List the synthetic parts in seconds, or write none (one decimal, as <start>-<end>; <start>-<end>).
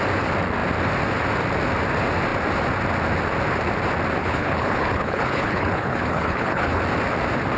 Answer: 4.2-6.8